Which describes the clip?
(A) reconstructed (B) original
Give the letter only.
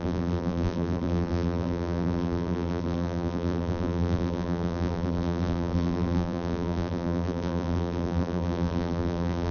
A